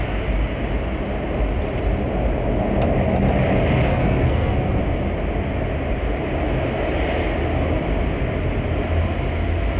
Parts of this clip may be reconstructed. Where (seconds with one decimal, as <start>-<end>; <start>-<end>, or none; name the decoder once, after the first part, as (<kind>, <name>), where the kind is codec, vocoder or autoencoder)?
3.9-4.8 (codec, SNAC)